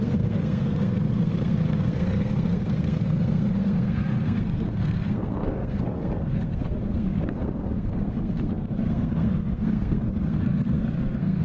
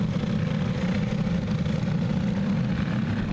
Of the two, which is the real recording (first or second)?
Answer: second